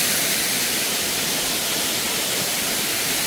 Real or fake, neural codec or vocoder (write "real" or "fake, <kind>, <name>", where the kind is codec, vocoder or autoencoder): real